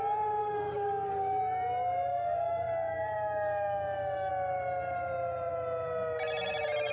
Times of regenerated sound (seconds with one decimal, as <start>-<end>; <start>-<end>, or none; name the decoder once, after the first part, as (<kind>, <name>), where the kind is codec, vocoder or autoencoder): 0.4-1.4 (codec, DAC); 2.1-4.3